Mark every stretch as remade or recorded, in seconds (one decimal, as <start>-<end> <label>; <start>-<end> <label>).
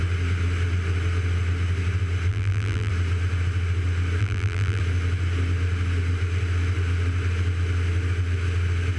0.0-2.3 recorded; 2.3-2.9 remade; 2.9-4.2 recorded; 4.2-4.8 remade; 4.8-9.0 recorded